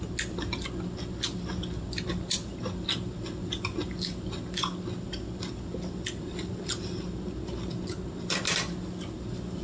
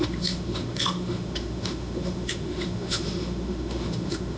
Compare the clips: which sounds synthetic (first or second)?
second